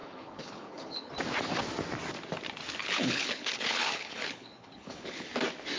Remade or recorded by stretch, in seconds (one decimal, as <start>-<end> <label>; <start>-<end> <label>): 0.0-1.1 remade; 1.1-2.8 recorded; 2.8-5.3 remade; 5.3-5.8 recorded